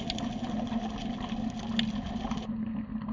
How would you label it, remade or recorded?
recorded